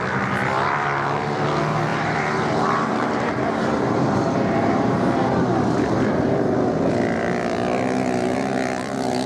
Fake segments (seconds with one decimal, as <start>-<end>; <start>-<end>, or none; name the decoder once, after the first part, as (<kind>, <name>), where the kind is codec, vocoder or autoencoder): 1.9-6.9 (vocoder, BigVGAN v2)

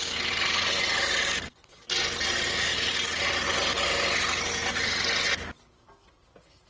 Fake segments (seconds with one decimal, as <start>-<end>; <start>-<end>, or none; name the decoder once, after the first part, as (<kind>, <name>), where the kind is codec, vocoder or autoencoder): none